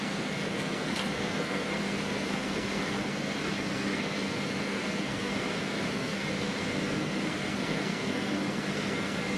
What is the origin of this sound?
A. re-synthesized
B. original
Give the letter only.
A